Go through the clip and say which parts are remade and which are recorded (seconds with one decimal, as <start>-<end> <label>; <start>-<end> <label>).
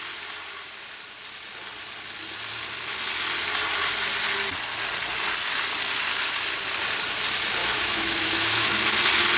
0.0-7.6 recorded; 7.6-8.8 remade; 8.8-9.4 recorded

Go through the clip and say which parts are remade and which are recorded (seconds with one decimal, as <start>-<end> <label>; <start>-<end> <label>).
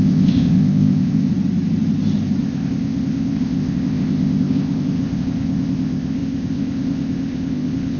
0.0-1.3 remade; 1.3-2.4 recorded; 2.4-8.0 remade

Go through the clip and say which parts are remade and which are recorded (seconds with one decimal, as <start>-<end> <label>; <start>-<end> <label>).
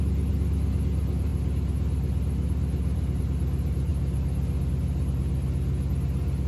0.0-6.5 recorded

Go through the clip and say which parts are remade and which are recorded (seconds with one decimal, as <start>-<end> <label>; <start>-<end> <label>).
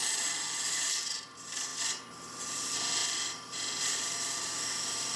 0.0-1.7 remade; 1.7-2.4 recorded; 2.4-5.2 remade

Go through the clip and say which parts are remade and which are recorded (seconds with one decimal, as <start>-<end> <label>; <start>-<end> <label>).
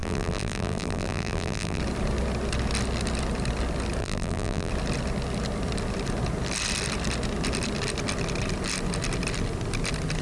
0.0-1.8 remade; 1.8-4.0 recorded; 4.0-4.7 remade; 4.7-10.2 recorded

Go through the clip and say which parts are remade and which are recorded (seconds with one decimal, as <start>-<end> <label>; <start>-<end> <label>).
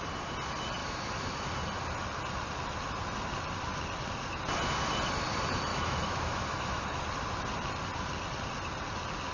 0.0-0.8 recorded; 0.8-1.5 remade; 1.5-5.7 recorded; 5.7-7.0 remade; 7.0-9.3 recorded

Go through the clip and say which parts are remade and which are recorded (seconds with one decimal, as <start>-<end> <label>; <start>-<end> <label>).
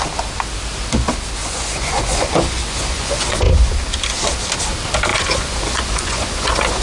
0.0-1.4 recorded; 1.4-3.7 remade; 3.7-5.1 recorded; 5.1-6.8 remade